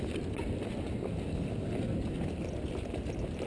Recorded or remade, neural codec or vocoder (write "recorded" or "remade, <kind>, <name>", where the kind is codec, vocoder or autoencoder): recorded